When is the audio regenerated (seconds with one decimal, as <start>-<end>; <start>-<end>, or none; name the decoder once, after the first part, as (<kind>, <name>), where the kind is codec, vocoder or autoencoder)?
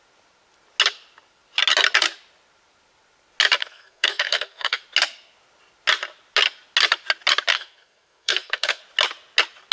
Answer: 3.6-4.8 (codec, SNAC); 7.5-8.8